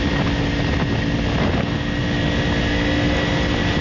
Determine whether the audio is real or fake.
real